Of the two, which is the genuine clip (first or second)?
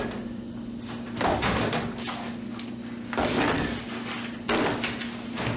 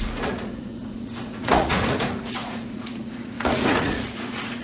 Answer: first